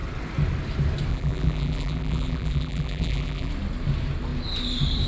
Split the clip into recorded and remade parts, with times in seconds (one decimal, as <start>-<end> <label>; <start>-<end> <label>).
0.0-1.1 recorded; 1.1-3.5 remade; 3.5-5.1 recorded